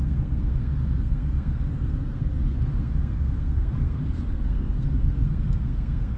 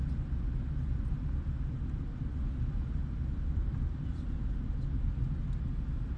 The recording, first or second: second